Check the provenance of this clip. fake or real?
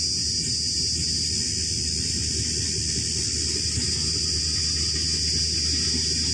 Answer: real